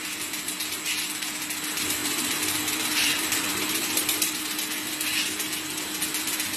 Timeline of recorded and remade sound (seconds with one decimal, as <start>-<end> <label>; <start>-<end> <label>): 0.0-2.0 recorded; 2.0-4.4 remade; 4.4-6.6 recorded